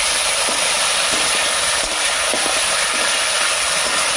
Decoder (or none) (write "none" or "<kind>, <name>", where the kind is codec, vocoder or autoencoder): vocoder, BigVGAN v2